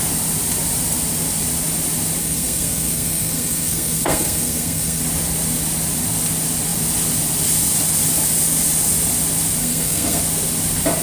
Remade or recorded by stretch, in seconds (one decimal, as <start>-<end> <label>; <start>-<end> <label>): 0.0-2.2 recorded; 2.2-5.0 remade; 5.0-9.6 recorded; 9.6-10.2 remade; 10.2-11.0 recorded